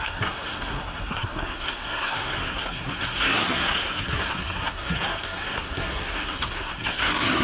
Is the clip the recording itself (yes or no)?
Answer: no